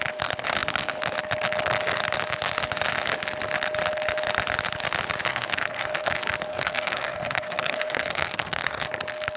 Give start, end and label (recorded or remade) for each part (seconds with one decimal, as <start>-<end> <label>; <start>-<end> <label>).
0.0-5.3 recorded; 5.3-6.1 remade; 6.1-6.5 recorded; 6.5-8.9 remade; 8.9-9.4 recorded